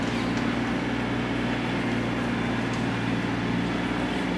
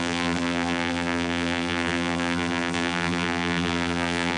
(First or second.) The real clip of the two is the first